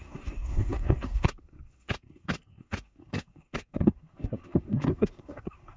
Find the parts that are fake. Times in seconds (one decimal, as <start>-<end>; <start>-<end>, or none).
0.0-5.8